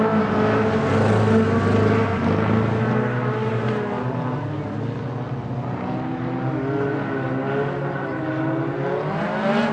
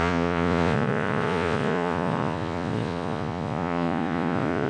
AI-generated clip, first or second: second